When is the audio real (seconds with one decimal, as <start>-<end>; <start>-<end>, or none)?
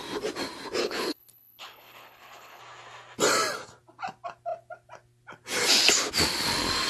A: 0.0-0.8; 2.6-6.9